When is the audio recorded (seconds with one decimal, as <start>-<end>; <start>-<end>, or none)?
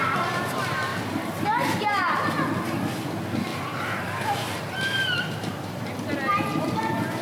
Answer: 0.0-3.5; 6.1-6.5